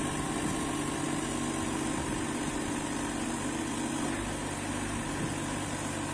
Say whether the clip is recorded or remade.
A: recorded